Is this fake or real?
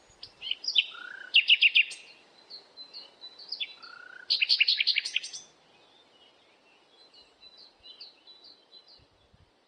real